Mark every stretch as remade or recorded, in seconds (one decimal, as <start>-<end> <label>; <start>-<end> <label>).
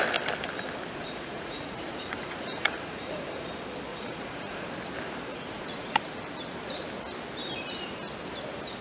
0.0-1.0 recorded; 1.0-3.5 remade; 3.5-3.9 recorded; 3.9-4.7 remade; 4.7-5.3 recorded; 5.3-6.0 remade; 6.0-8.8 recorded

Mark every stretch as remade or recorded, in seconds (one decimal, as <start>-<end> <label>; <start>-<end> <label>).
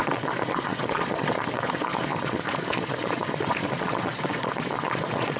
0.0-5.4 remade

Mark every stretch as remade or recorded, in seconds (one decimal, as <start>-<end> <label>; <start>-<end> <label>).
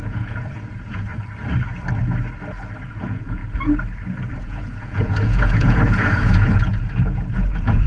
0.0-1.1 remade; 1.1-2.9 recorded; 2.9-3.4 remade; 3.4-4.3 recorded; 4.3-7.9 remade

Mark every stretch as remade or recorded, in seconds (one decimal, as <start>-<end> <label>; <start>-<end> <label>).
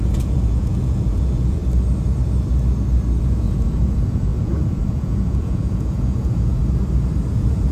0.0-1.6 remade; 1.6-3.2 recorded; 3.2-6.6 remade; 6.6-7.3 recorded; 7.3-7.7 remade